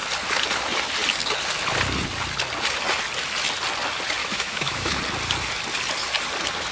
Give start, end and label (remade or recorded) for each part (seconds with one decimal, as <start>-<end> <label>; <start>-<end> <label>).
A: 0.0-4.2 recorded; 4.2-4.9 remade; 4.9-6.7 recorded